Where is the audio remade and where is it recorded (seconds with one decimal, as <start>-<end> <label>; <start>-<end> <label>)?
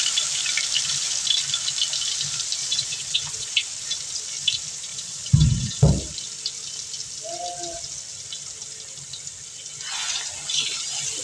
0.0-2.6 recorded; 2.6-3.5 remade; 3.5-4.9 recorded; 4.9-5.9 remade; 5.9-11.2 recorded